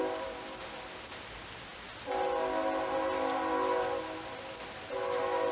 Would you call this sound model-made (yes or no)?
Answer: no